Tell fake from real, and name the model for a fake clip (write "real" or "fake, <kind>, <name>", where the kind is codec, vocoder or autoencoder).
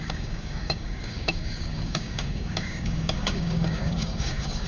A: fake, codec, DAC